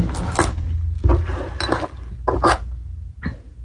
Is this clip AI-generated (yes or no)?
no